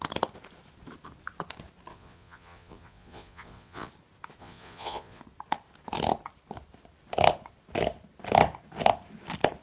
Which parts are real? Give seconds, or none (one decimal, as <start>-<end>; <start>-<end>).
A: 0.0-1.9; 3.9-4.4; 5.2-9.6